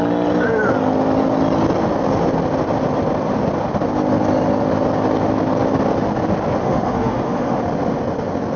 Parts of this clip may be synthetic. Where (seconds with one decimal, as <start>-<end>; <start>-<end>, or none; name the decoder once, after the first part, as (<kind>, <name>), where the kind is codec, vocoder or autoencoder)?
6.6-7.6 (autoencoder, DAC-VAE)